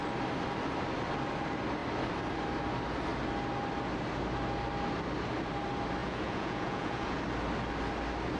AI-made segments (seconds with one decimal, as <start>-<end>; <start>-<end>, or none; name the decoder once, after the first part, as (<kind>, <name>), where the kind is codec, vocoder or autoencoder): 6.0-7.2 (vocoder, Vocos)